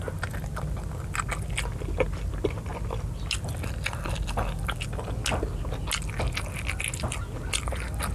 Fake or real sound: real